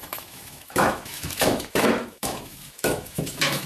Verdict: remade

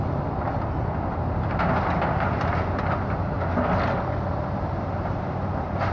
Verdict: recorded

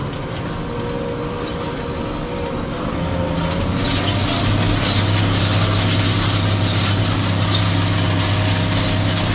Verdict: recorded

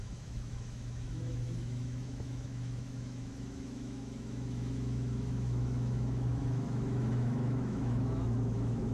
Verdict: remade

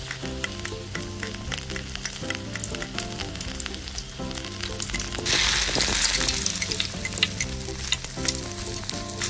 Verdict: recorded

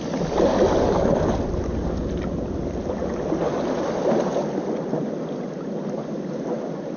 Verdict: recorded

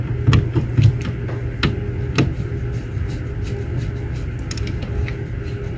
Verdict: recorded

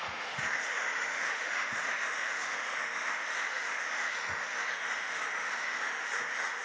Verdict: remade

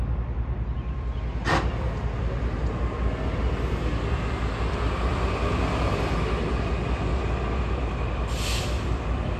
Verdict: recorded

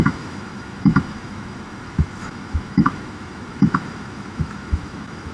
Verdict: remade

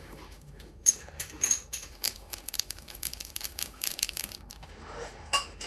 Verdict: remade